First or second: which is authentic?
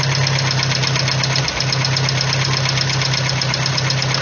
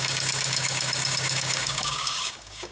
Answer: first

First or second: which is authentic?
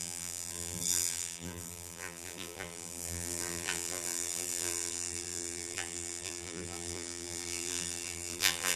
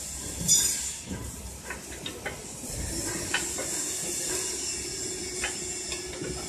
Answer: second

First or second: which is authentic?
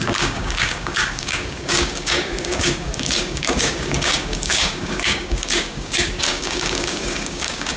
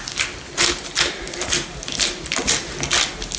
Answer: second